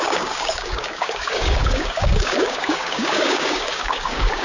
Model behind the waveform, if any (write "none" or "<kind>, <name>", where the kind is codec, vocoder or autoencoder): codec, DAC